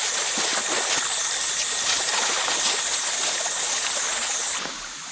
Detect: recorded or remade recorded